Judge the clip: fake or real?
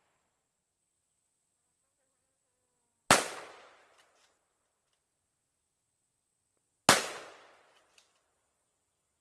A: real